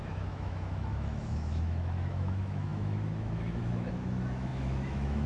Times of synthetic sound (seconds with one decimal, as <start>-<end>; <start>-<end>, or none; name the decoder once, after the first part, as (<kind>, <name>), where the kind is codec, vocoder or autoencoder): 0.0-5.3 (autoencoder, DAC-VAE)